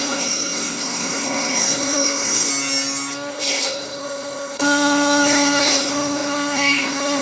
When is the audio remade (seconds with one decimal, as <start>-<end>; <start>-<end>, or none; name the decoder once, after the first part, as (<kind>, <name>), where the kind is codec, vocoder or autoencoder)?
0.0-2.5 (codec, SNAC); 3.3-7.2